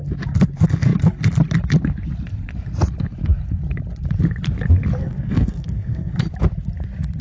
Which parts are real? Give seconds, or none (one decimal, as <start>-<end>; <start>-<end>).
0.0-5.0; 6.3-7.2